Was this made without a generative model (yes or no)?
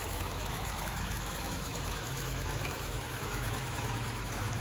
no